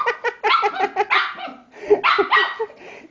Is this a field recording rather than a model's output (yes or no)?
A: yes